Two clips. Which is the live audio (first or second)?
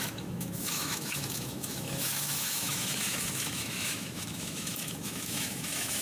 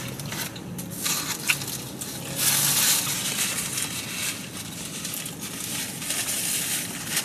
second